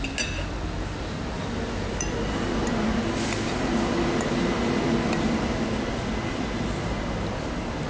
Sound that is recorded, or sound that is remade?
recorded